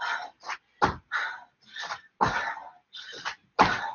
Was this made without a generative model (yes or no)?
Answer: yes